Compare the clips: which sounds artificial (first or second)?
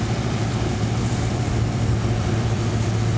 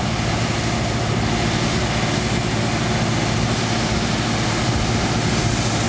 first